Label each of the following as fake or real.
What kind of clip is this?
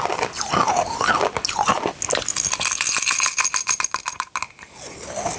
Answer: real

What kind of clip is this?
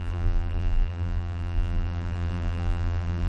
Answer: fake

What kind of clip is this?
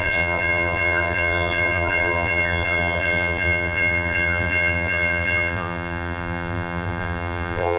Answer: fake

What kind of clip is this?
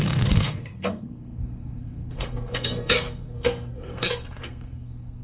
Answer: fake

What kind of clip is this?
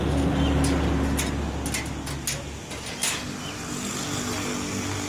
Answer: real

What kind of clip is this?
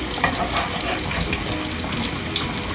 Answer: real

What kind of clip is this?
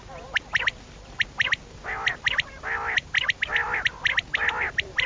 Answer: real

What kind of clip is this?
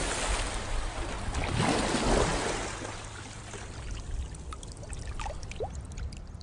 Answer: real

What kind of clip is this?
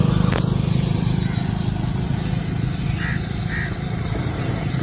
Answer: real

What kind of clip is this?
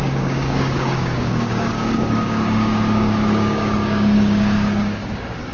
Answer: fake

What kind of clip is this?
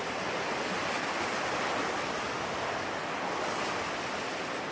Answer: real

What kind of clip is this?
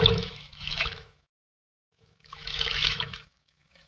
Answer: fake